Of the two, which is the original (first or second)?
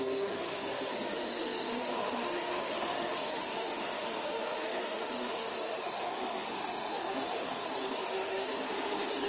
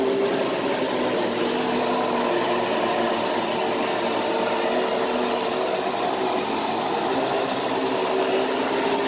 second